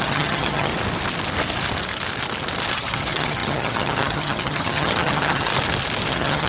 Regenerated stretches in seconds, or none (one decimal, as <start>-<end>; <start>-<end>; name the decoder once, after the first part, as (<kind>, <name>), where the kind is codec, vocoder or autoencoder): 0.0-0.7 (vocoder, HiFi-GAN); 2.7-5.5; 6.1-6.5